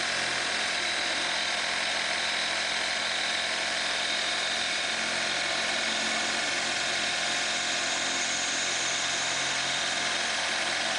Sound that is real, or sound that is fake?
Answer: real